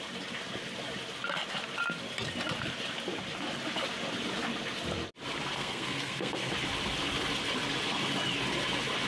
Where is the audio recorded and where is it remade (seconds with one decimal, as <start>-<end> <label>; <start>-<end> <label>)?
0.0-5.6 recorded; 5.6-6.5 remade; 6.5-9.1 recorded